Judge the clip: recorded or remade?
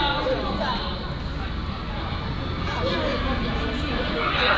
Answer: recorded